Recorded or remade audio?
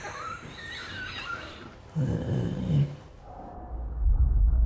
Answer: remade